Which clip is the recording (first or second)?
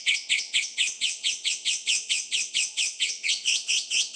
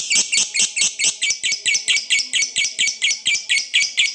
second